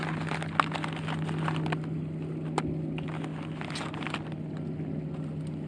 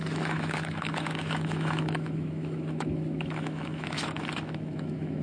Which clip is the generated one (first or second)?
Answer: second